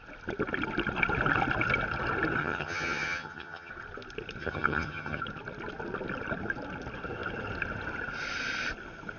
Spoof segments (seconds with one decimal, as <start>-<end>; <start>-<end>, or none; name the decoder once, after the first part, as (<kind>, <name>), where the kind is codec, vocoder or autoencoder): 2.4-3.7 (vocoder, HiFi-GAN); 4.4-5.2